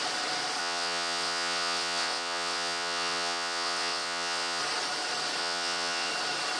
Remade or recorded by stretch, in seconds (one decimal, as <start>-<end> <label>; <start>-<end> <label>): 0.0-0.6 recorded; 0.6-4.6 remade; 4.6-5.4 recorded; 5.4-6.1 remade; 6.1-6.6 recorded

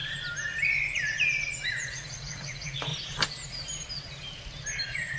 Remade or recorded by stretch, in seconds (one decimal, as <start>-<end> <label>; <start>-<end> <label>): 0.0-1.7 recorded; 1.7-2.9 remade; 2.9-4.8 recorded; 4.8-5.2 remade

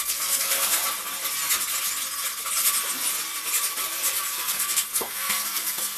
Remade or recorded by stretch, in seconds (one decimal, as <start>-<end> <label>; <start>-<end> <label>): 0.0-0.8 remade; 0.8-4.3 recorded; 4.3-6.0 remade

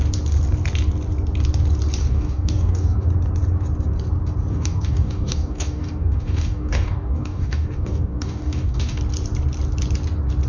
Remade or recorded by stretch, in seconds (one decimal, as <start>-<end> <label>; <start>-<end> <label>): 0.0-2.0 recorded; 2.0-3.1 remade; 3.1-4.5 recorded; 4.5-9.0 remade; 9.0-10.5 recorded